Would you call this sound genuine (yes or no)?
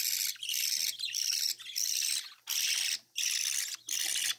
yes